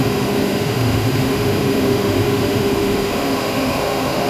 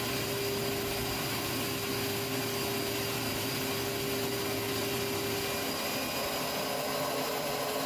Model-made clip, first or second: first